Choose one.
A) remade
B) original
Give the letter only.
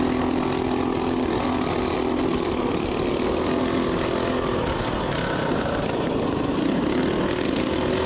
B